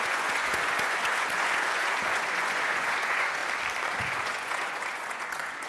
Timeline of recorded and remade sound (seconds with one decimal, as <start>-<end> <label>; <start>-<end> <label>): 0.0-3.4 remade; 3.4-3.9 recorded; 3.9-5.7 remade